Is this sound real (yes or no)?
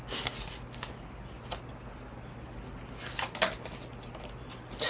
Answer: yes